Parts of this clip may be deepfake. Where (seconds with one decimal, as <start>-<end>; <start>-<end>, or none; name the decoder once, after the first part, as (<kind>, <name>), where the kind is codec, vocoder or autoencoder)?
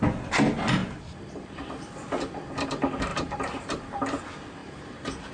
0.8-2.3 (vocoder, BigVGAN v2); 3.1-3.6; 4.6-5.3